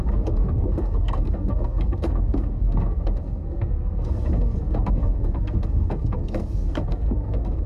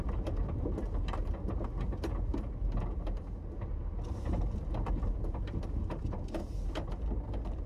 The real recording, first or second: second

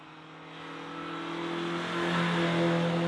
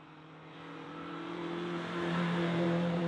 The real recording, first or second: first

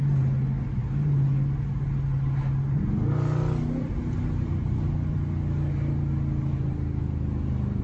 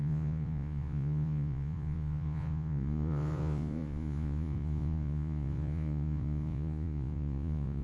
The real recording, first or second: first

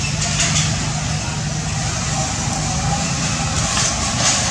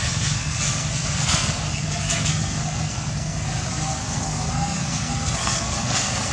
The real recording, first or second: first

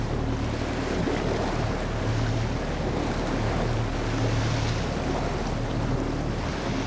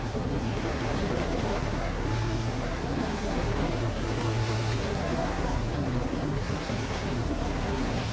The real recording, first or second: first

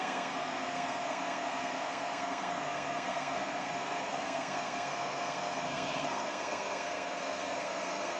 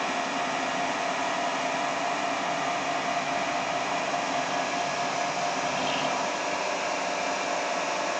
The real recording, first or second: second